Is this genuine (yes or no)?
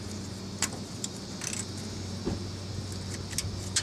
yes